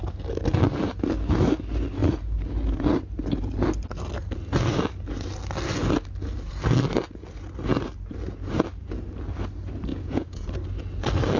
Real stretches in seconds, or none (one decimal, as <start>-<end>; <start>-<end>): 0.0-9.9; 10.5-11.4